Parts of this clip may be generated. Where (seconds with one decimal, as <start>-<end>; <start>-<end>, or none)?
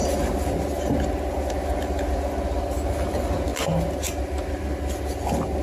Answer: none